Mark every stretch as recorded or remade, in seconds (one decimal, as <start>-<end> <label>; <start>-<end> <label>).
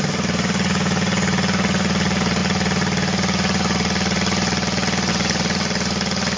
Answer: 0.0-6.4 recorded